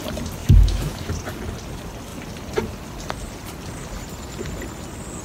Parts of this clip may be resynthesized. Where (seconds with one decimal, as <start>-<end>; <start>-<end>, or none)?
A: 0.4-1.1